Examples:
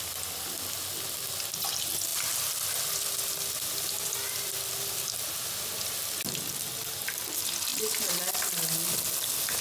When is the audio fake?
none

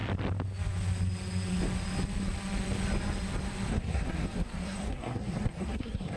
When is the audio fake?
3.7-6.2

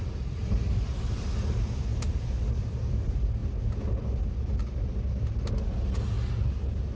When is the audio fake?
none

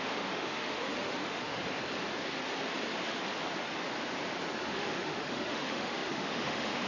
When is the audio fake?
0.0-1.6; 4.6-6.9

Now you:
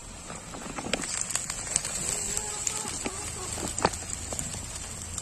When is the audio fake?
none

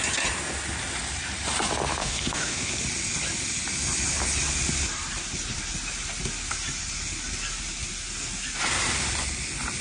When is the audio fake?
2.0-2.7